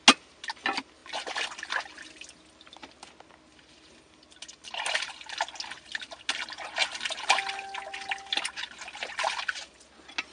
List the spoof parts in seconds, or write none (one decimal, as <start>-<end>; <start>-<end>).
none

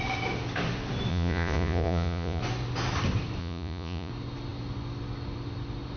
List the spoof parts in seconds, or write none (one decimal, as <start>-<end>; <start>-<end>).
1.1-2.4; 3.4-4.1

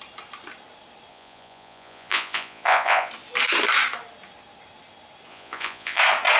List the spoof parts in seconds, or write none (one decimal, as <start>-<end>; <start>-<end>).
1.1-3.1; 5.3-6.0

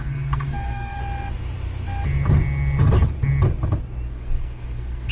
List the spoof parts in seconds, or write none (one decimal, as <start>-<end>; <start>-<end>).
0.0-1.0; 4.1-5.1

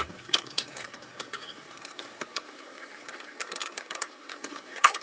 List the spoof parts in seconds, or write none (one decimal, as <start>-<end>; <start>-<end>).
0.0-5.0

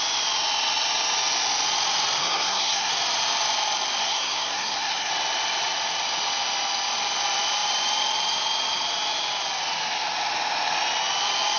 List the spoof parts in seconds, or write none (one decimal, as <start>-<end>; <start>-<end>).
2.2-2.9; 4.0-5.1

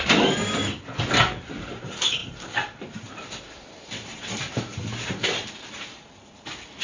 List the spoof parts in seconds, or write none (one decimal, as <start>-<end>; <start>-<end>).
0.0-0.9; 1.6-6.8